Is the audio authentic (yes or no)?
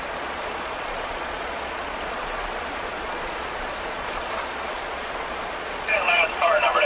no